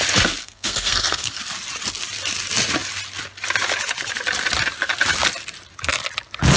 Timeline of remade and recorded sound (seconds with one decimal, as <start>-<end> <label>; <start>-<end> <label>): 0.0-0.4 recorded; 0.4-1.4 remade; 1.4-6.6 recorded